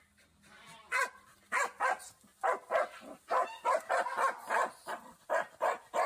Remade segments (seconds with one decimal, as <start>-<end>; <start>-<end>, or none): none